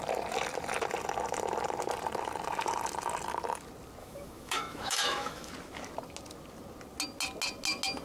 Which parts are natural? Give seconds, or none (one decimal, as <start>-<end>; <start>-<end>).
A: 0.0-4.0; 5.5-8.0